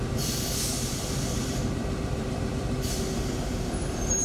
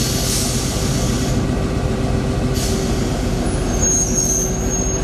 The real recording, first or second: second